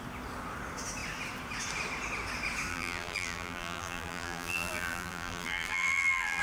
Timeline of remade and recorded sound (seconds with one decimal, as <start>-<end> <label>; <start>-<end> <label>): 0.0-2.7 recorded; 2.7-6.4 remade